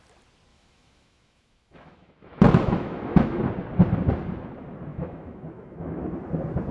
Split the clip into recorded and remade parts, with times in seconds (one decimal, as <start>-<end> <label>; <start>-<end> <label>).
0.0-0.5 recorded; 0.5-3.4 remade; 3.4-4.9 recorded; 4.9-6.0 remade; 6.0-6.7 recorded